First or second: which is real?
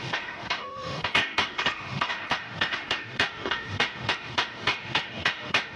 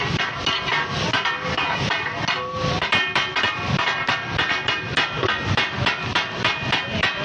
second